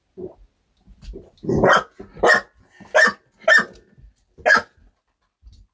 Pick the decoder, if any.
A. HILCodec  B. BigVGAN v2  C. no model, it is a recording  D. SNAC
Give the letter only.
C